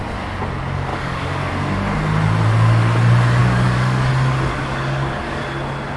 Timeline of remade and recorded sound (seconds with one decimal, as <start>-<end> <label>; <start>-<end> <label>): 0.0-0.9 recorded; 0.9-1.5 remade; 1.5-3.4 recorded; 3.4-4.1 remade; 4.1-4.5 recorded; 4.5-5.4 remade; 5.4-6.0 recorded